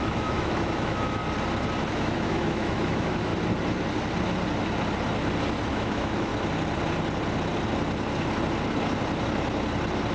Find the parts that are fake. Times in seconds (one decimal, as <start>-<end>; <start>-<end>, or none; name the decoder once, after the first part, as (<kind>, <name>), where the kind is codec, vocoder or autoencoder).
0.0-1.2 (autoencoder, DAC-VAE); 1.9-3.3; 5.7-6.3